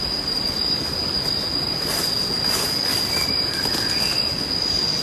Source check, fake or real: real